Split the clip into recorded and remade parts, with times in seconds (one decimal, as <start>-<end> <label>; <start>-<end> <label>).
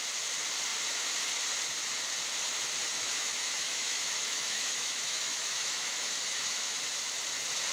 0.0-2.9 recorded; 2.9-6.9 remade; 6.9-7.7 recorded